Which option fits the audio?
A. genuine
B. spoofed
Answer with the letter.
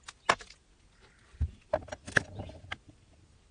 A